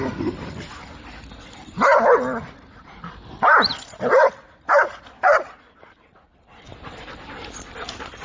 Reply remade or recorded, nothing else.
recorded